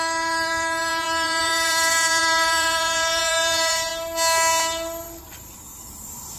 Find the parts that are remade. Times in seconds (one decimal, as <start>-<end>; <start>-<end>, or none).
0.0-3.9; 5.2-6.4